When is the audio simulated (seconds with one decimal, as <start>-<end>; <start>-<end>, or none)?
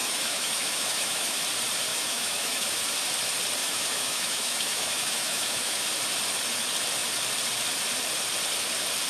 0.0-1.4; 1.9-2.8; 3.6-5.9